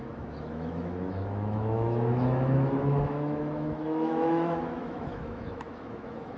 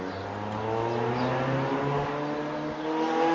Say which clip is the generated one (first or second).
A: first